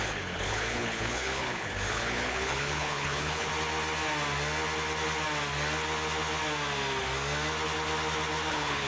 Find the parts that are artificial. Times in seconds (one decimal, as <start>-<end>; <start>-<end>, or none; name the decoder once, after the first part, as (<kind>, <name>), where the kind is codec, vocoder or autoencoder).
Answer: 0.0-3.5 (codec, HILCodec); 8.5-8.9